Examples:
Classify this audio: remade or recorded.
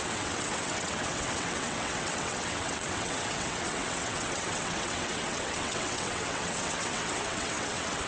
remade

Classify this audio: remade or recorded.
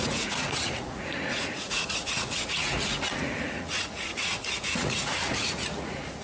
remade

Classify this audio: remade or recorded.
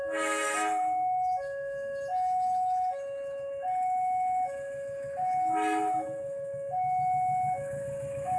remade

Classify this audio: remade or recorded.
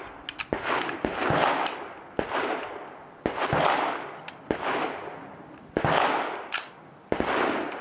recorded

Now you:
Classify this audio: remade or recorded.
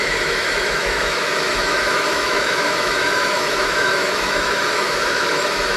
remade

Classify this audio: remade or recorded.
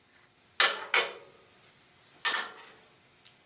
recorded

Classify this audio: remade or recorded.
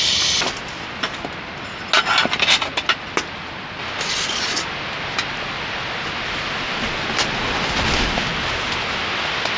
recorded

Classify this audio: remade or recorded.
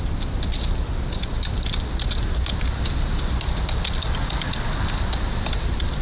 recorded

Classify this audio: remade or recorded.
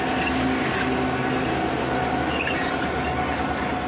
recorded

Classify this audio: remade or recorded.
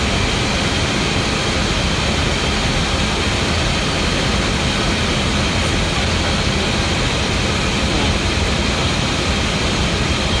recorded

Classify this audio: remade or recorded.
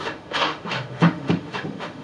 remade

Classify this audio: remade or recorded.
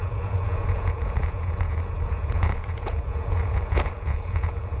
remade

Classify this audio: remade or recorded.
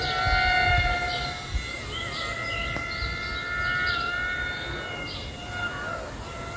recorded